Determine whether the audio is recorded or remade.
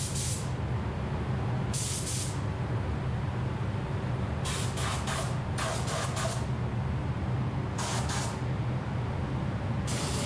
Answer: recorded